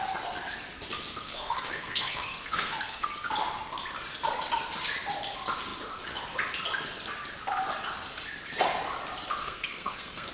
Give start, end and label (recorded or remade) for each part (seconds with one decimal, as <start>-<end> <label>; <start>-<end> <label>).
0.0-1.1 recorded; 1.1-3.1 remade; 3.1-9.4 recorded; 9.4-10.3 remade